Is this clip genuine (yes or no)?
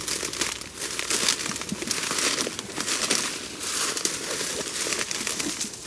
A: yes